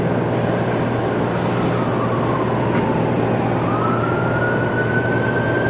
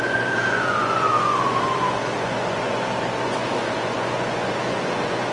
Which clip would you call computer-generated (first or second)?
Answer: second